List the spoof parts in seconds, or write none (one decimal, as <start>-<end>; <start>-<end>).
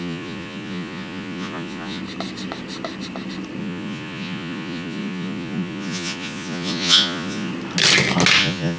0.0-2.0; 3.6-7.5; 8.4-8.8